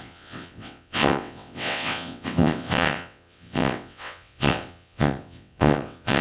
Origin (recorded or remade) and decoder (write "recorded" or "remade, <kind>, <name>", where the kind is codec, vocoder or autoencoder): remade, vocoder, WaveNeXt